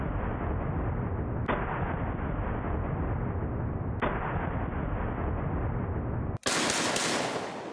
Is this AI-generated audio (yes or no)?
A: no